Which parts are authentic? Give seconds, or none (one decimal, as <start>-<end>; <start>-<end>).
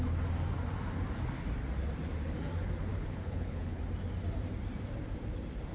0.0-2.9; 3.8-5.7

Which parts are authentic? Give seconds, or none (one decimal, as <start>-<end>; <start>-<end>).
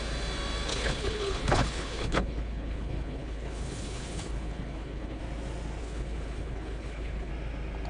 0.0-0.7; 5.2-5.8; 7.3-7.9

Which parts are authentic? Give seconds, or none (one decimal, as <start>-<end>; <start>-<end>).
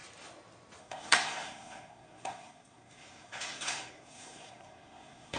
0.0-0.8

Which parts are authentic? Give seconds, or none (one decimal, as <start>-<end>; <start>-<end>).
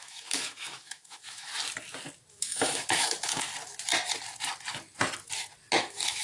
1.5-2.3; 3.5-5.8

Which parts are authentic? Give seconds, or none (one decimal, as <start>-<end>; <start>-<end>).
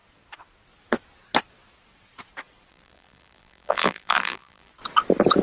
0.0-2.7; 4.7-5.4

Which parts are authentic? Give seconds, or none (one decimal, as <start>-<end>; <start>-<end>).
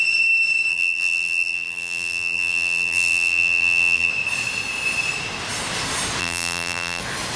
0.0-0.7; 4.1-6.2; 7.0-7.4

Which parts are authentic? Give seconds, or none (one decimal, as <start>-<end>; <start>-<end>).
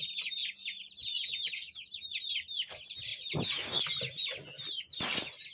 0.0-5.5